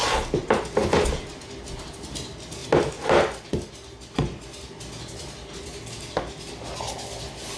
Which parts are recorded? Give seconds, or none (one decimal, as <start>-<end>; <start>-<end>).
0.0-7.6